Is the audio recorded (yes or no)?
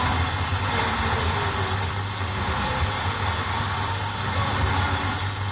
no